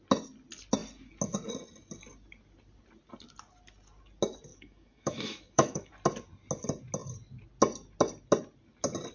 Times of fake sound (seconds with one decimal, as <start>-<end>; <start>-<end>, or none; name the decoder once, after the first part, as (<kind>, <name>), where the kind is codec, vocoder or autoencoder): 4.5-5.9 (autoencoder, DAC-VAE)